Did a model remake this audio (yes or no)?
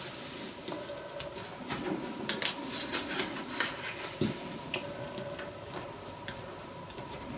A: no